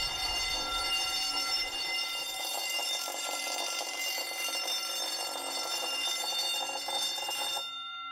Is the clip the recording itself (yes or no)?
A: no